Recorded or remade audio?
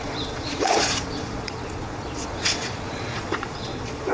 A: remade